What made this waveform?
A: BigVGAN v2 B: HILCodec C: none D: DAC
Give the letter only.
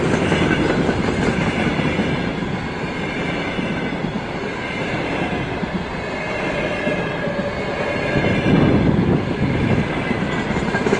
C